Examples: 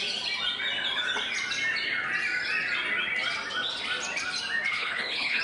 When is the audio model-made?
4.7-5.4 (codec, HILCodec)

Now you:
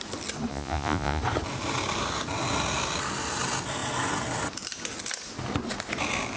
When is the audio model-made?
0.5-1.2 (vocoder, Vocos)

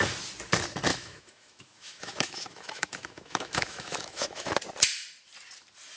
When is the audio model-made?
0.9-4.5 (autoencoder, DAC-VAE)

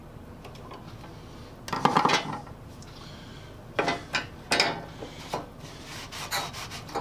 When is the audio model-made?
1.9-3.3 (vocoder, BigVGAN v2); 6.5-7.0

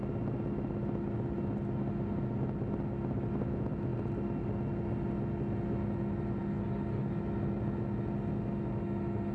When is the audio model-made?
none

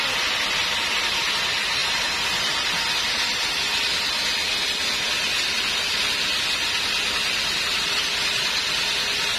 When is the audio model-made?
none